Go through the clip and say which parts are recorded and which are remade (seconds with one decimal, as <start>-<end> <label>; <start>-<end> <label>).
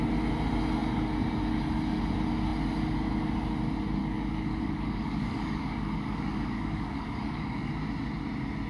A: 0.0-4.0 recorded; 4.0-7.7 remade; 7.7-8.7 recorded